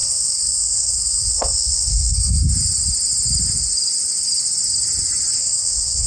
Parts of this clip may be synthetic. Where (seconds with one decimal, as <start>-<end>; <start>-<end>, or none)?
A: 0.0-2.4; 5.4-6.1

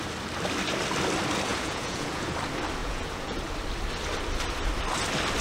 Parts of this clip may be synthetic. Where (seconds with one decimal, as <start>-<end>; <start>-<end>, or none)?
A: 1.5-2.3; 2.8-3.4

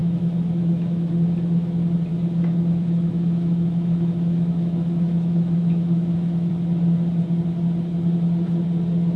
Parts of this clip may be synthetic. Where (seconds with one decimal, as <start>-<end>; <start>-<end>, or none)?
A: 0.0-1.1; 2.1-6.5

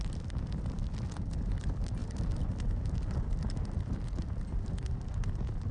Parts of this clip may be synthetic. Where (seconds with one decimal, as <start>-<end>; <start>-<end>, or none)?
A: 0.0-5.7

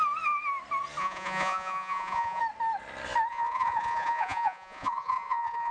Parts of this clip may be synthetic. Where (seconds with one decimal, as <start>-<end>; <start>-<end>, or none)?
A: 1.0-2.4; 3.3-5.7

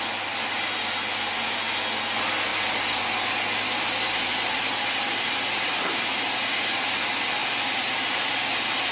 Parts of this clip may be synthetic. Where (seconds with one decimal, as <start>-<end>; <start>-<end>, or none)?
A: 2.5-5.9; 7.4-8.5